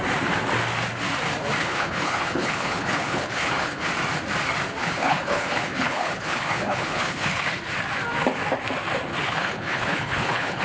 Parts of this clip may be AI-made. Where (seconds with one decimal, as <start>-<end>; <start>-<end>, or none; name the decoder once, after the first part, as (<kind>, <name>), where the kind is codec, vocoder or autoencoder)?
1.6-3.9 (codec, HILCodec); 4.8-7.4; 9.1-10.6